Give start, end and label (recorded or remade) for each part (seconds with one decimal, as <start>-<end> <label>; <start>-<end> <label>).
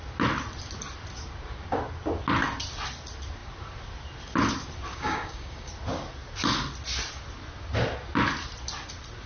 0.0-4.9 recorded; 4.9-5.7 remade; 5.7-9.3 recorded